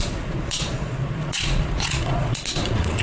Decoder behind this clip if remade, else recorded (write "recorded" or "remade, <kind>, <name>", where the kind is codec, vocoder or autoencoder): remade, vocoder, Vocos